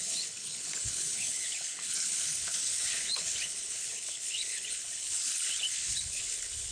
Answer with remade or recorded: remade